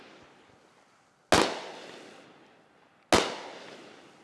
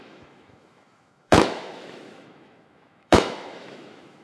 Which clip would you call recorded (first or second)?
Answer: first